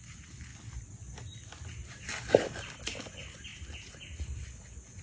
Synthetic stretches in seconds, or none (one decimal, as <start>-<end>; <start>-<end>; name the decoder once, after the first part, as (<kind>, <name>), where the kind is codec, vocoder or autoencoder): 0.0-0.5 (vocoder, BigVGAN v2); 1.9-3.5; 4.1-5.0